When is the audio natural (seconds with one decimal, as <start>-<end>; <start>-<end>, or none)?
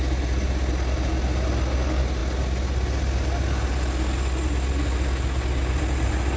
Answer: 0.0-6.4